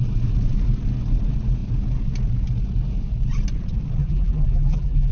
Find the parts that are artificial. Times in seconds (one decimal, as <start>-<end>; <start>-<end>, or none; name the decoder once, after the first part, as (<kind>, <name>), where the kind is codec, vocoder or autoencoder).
4.0-5.1 (vocoder, BigVGAN v2)